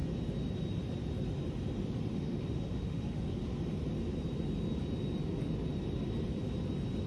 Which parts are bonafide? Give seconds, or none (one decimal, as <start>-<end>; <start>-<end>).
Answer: 0.0-2.1; 3.3-7.1